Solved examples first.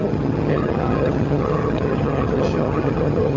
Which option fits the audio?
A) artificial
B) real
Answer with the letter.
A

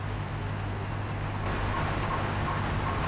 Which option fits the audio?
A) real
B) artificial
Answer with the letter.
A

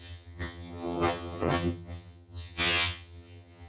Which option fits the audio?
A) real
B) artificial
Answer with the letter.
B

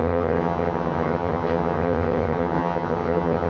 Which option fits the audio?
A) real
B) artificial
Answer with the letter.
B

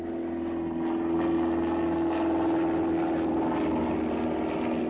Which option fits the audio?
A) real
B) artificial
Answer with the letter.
A